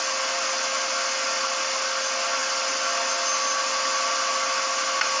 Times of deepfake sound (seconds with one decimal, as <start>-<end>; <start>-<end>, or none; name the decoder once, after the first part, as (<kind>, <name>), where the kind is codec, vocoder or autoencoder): none